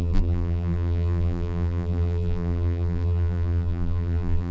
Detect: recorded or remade remade